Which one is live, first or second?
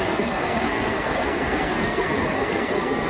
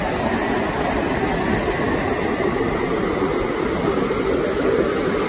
second